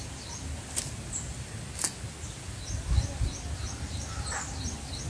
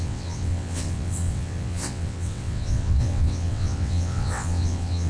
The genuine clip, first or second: first